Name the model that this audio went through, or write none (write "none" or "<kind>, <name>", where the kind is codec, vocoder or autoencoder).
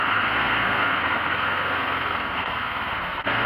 codec, SNAC